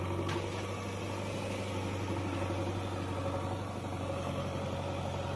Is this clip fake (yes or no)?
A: no